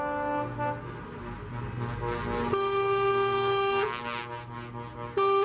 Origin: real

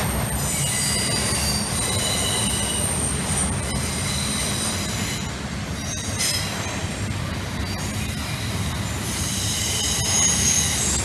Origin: real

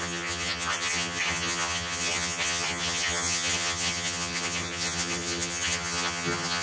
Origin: fake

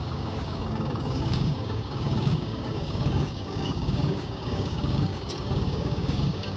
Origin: fake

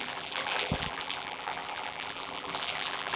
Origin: fake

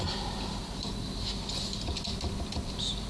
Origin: real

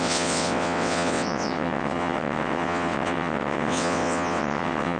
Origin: fake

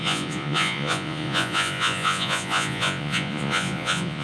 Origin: fake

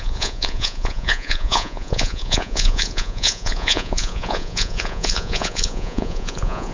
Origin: fake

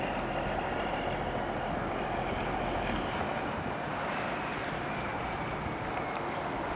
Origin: real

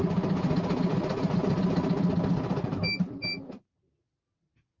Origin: real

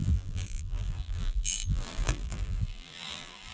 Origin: fake